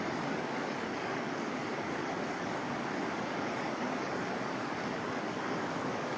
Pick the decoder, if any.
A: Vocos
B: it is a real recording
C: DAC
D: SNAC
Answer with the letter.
C